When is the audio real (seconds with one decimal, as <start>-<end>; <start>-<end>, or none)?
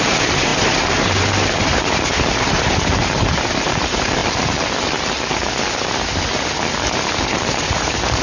4.2-7.3